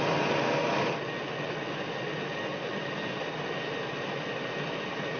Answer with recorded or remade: recorded